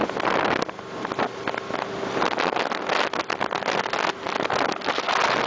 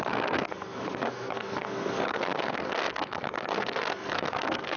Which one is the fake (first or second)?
second